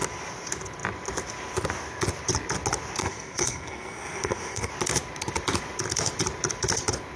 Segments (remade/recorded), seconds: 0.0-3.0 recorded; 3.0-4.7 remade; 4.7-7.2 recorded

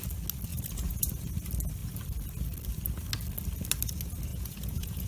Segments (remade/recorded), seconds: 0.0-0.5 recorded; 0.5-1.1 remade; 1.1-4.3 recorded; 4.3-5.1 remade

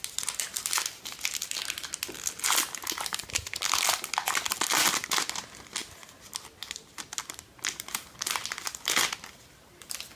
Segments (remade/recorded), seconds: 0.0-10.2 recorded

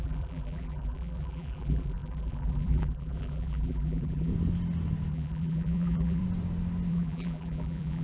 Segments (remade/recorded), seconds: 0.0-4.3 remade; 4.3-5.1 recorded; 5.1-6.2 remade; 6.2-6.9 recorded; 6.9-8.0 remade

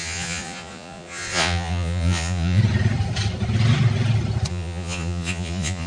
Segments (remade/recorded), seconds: 0.0-2.6 remade; 2.6-4.5 recorded; 4.5-5.9 remade

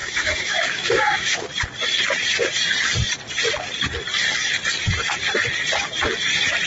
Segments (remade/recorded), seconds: 0.0-1.4 remade; 1.4-6.7 recorded

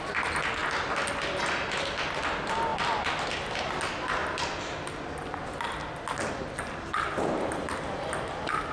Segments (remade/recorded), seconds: 0.0-8.7 recorded

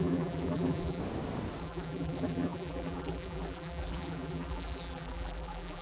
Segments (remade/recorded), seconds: 0.0-1.0 remade; 1.0-1.6 recorded; 1.6-5.8 remade